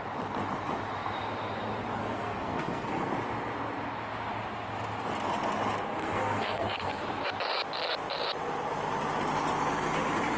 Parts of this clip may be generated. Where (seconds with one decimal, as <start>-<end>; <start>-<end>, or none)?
2.0-3.1; 6.0-7.0